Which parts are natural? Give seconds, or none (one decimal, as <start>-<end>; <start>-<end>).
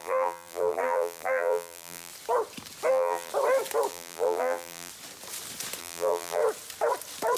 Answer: 2.1-2.9; 3.3-3.9; 4.9-5.8; 6.4-7.4